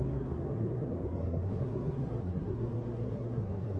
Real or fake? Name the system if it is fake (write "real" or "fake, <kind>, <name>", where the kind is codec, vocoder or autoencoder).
fake, codec, SNAC